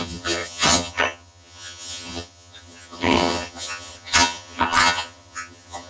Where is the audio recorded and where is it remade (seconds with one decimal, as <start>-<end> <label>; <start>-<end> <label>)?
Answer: 0.0-5.9 remade

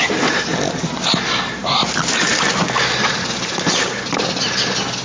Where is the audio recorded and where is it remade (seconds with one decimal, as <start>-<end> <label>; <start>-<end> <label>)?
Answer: 0.0-5.0 recorded

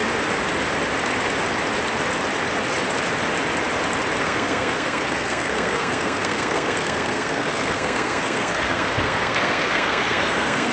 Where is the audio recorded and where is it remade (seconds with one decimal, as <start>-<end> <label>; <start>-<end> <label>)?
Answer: 0.0-4.2 recorded; 4.2-10.7 remade

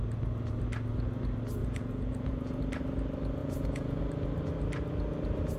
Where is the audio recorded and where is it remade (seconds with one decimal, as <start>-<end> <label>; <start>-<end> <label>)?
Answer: 0.0-1.6 recorded; 1.6-2.6 remade; 2.6-3.4 recorded; 3.4-4.0 remade; 4.0-5.6 recorded